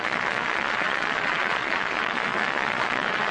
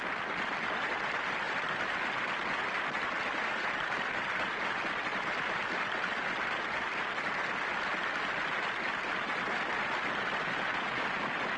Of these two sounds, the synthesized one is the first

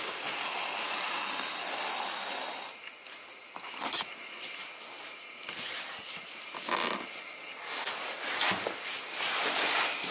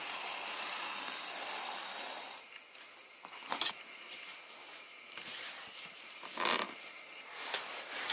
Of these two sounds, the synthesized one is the second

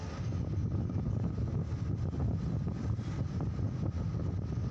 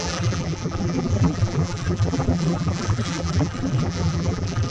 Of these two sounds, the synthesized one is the second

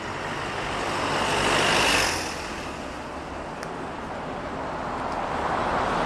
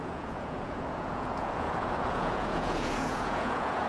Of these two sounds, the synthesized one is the second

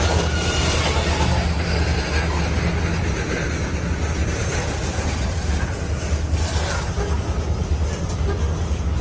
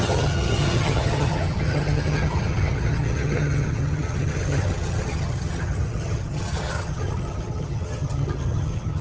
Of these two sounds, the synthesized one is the second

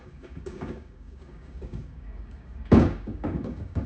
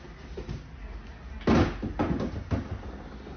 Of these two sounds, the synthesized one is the first